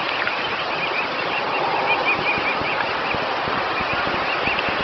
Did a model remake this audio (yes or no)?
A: no